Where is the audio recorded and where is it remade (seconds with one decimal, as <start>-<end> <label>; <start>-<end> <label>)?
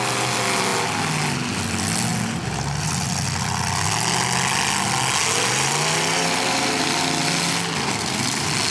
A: 0.0-8.7 recorded